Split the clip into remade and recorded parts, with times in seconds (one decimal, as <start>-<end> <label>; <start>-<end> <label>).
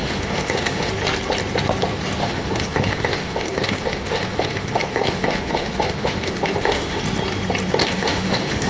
0.0-0.9 remade; 0.9-2.2 recorded; 2.2-7.0 remade; 7.0-7.8 recorded; 7.8-8.7 remade